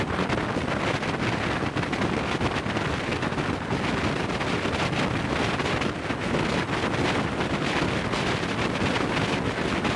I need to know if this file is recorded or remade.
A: recorded